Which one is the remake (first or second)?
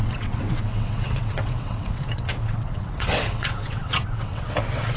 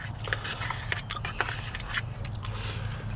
first